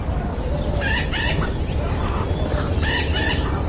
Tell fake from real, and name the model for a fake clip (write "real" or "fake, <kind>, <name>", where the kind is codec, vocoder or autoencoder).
fake, vocoder, BigVGAN v2